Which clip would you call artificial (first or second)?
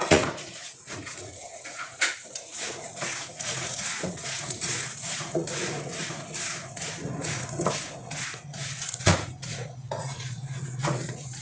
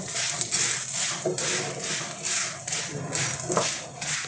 first